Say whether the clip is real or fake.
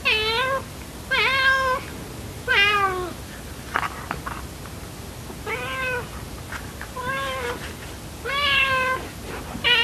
real